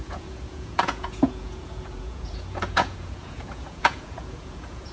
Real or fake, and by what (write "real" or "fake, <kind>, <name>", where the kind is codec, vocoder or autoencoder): fake, vocoder, Vocos